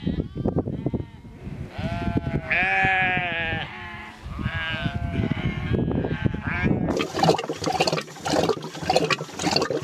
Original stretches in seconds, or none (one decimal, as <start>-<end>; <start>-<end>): 0.0-9.8